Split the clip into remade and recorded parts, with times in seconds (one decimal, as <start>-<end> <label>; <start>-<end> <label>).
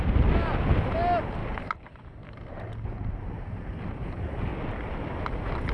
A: 0.0-1.4 recorded; 1.4-3.9 remade; 3.9-5.7 recorded